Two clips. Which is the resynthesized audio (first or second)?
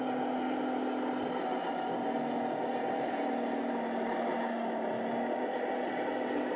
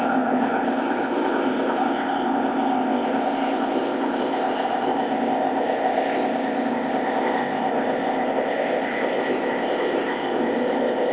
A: second